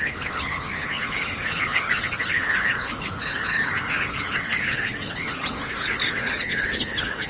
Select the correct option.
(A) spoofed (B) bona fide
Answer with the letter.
A